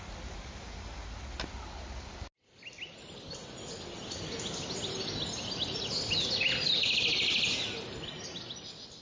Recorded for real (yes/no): yes